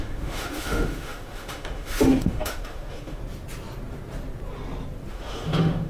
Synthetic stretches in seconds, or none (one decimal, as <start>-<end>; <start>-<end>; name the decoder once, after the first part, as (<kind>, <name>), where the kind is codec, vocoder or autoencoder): 0.0-3.2 (autoencoder, DAC-VAE); 5.1-5.9